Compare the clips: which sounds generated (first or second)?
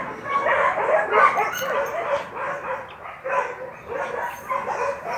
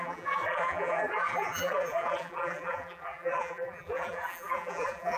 second